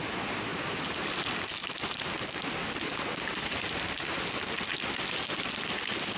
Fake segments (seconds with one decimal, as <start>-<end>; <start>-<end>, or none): none